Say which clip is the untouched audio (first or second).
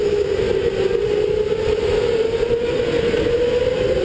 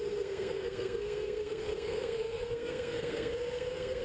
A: first